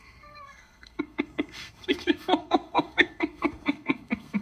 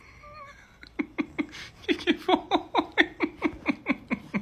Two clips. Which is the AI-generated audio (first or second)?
first